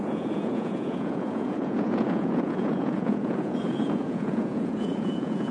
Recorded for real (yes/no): no